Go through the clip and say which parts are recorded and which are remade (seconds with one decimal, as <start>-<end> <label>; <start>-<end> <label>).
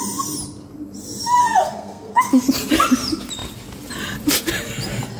0.0-1.4 recorded; 1.4-2.4 remade; 2.4-5.2 recorded